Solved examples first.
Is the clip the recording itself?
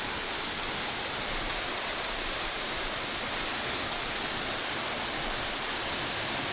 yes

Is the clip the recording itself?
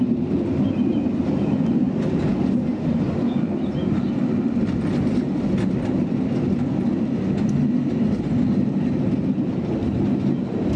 yes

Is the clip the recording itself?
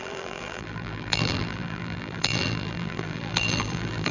no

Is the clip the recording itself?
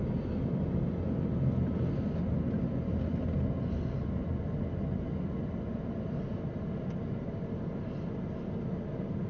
yes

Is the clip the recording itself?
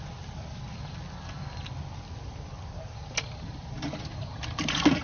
yes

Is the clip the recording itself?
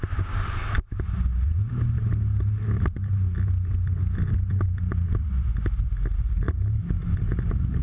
yes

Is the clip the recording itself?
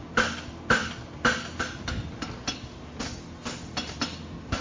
yes